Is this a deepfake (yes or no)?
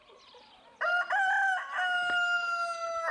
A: no